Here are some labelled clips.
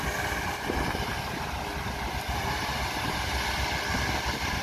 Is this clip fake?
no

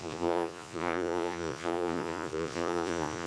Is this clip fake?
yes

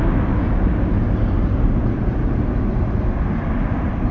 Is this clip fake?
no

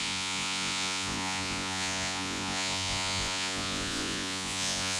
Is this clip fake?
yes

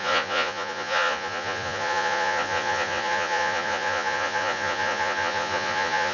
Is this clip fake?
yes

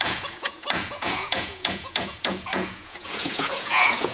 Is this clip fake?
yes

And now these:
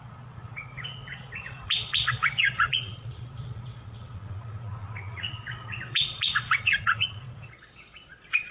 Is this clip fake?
yes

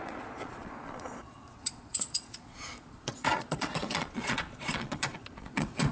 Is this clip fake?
yes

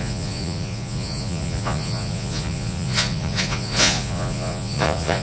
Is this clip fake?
yes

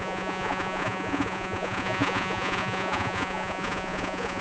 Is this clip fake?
yes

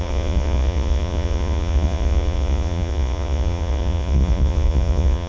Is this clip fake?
yes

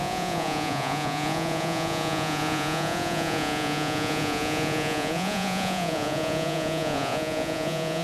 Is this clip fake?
yes